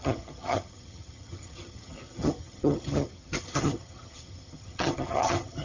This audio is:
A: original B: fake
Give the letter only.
B